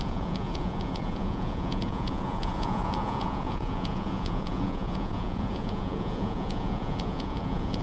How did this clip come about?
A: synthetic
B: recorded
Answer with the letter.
A